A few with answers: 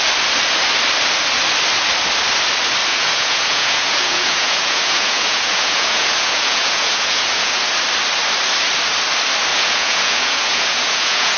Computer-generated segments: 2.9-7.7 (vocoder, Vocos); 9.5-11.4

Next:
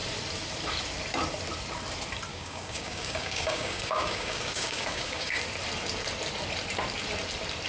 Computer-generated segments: 2.3-5.4 (codec, DAC)

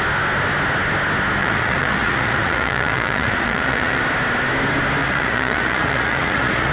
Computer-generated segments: 1.4-4.0 (vocoder, Vocos); 5.0-6.7